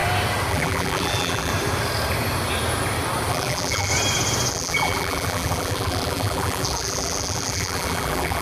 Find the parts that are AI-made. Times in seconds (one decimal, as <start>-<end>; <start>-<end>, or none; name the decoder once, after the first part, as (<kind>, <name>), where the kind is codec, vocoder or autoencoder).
0.5-1.5 (vocoder, BigVGAN v2); 3.3-3.9; 4.5-8.4